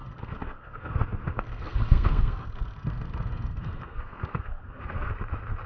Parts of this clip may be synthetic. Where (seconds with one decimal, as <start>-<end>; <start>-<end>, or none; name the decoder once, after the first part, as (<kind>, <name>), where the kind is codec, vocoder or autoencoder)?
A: 0.0-5.1 (codec, SNAC)